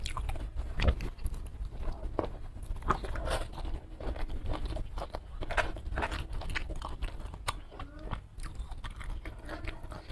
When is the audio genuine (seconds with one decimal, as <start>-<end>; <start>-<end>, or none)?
0.0-10.1